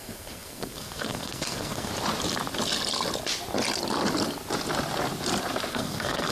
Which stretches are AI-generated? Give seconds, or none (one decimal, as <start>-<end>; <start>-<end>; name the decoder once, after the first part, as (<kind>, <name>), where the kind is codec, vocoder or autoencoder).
0.0-1.9 (codec, SNAC); 5.7-6.3